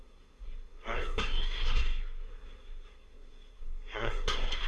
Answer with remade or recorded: remade